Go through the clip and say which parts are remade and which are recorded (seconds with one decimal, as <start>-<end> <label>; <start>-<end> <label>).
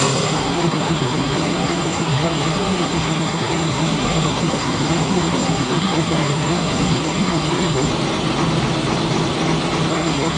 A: 0.0-7.9 remade; 7.9-9.9 recorded; 9.9-10.4 remade